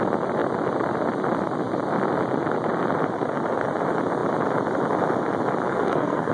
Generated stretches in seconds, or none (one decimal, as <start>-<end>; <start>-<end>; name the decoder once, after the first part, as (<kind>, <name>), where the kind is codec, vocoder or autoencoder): 5.7-6.3 (codec, SNAC)